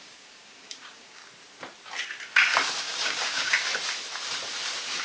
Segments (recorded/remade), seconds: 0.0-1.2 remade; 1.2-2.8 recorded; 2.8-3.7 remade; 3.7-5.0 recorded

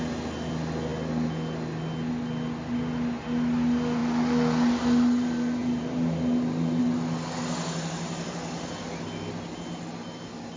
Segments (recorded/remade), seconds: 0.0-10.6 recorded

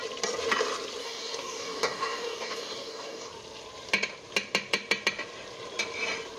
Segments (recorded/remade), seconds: 0.0-1.0 recorded; 1.0-3.3 remade; 3.3-6.4 recorded